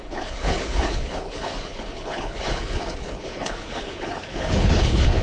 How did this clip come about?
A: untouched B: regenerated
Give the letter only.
B